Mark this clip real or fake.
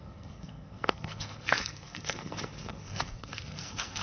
fake